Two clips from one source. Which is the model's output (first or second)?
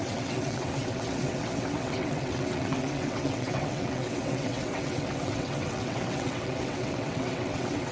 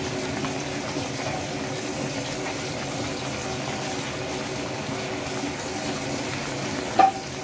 first